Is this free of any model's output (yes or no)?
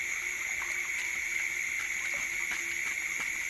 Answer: yes